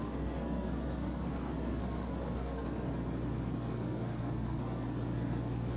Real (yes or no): no